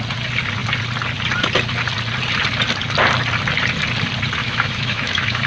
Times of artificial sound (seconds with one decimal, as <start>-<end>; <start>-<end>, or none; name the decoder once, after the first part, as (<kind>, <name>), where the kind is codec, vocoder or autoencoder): 4.4-5.5 (autoencoder, DAC-VAE)